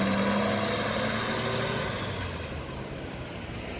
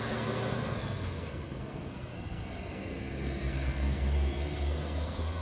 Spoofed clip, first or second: second